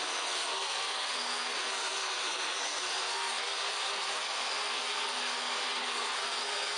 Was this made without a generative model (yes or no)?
no